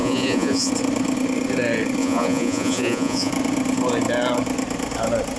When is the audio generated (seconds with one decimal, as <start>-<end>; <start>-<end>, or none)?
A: 0.0-0.7; 2.0-3.3